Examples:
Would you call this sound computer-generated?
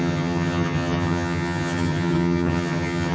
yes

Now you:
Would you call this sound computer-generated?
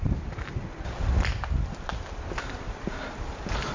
no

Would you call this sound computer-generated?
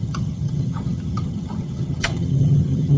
yes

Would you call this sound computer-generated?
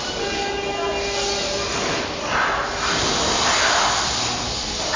no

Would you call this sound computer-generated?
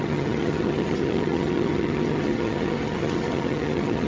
yes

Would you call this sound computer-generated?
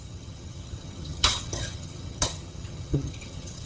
yes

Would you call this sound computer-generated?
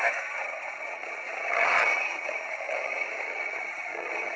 yes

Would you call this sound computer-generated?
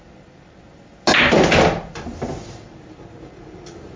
no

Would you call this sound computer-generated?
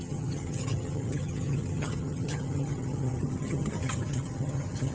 yes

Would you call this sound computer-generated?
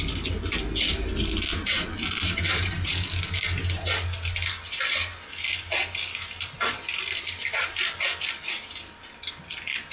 no